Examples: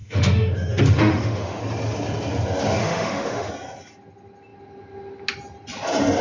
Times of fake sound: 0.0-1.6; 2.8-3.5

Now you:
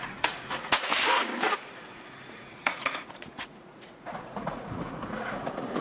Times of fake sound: 0.0-0.9; 1.7-5.8